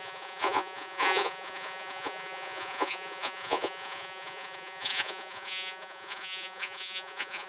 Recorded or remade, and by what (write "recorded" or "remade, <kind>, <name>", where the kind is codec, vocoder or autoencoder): remade, vocoder, Vocos